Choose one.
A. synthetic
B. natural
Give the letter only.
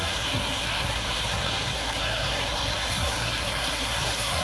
A